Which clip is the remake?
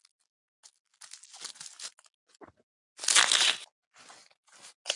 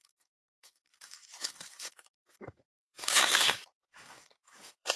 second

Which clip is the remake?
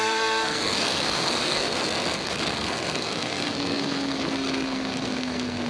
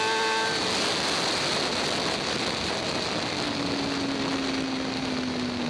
first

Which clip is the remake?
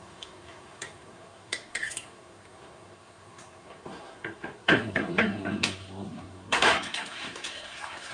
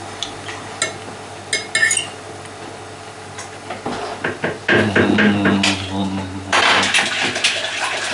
first